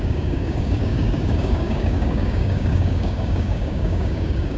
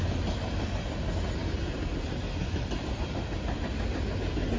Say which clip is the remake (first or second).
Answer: first